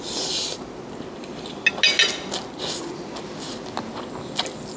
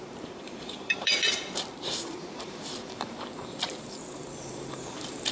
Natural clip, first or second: first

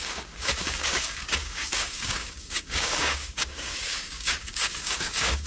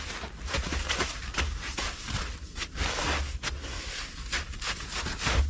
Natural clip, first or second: second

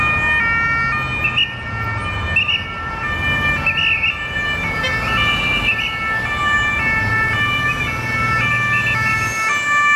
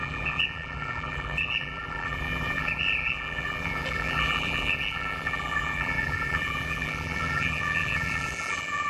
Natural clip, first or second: first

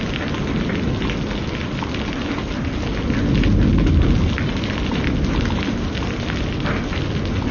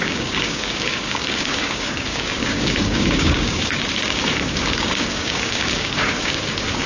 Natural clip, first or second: first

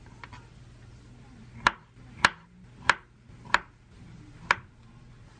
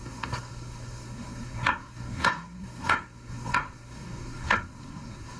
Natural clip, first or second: first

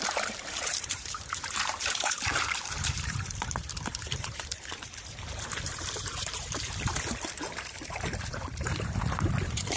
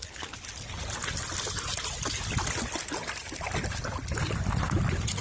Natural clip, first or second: second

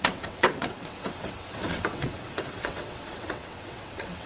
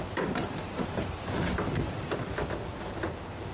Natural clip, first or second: second